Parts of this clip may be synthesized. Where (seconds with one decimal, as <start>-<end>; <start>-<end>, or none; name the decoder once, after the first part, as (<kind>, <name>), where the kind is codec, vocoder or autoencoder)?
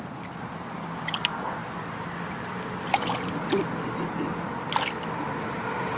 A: none